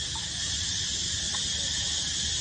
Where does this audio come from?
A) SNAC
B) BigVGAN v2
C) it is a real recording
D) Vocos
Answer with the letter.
C